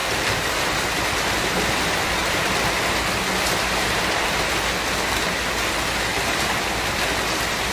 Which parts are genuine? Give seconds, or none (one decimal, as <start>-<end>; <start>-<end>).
0.9-6.1; 6.6-7.7